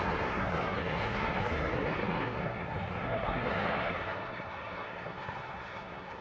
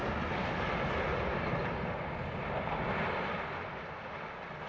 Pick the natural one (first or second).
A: second